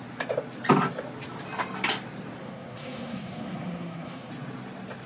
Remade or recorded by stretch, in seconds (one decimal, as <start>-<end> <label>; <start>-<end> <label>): 0.0-2.4 recorded; 2.4-4.3 remade; 4.3-5.1 recorded